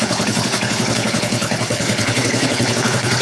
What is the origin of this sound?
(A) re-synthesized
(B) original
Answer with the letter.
A